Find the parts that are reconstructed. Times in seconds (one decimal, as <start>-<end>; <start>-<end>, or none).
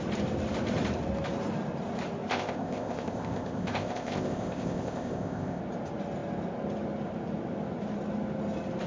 2.3-5.6